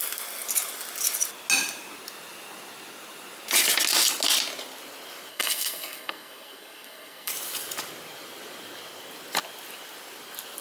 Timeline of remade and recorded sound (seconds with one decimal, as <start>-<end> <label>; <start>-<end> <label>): 0.0-5.3 recorded; 5.3-7.3 remade; 7.3-10.6 recorded